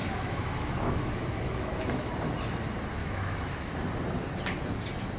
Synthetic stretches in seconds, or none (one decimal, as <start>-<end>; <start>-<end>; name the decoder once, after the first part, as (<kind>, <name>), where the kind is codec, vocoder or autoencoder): 0.0-2.1 (autoencoder, DAC-VAE); 3.0-3.7